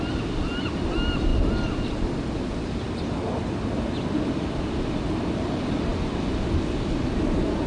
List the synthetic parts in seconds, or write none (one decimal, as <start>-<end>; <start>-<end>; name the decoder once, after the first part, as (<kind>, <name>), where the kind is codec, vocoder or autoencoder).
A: none